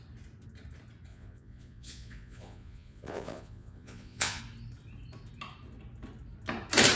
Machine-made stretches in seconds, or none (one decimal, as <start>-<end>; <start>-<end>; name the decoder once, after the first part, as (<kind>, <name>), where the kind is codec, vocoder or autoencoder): 1.1-4.4 (vocoder, Vocos)